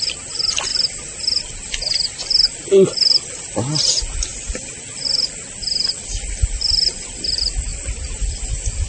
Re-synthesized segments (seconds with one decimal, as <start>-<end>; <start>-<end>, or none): 0.7-1.4; 4.3-7.2; 7.7-8.5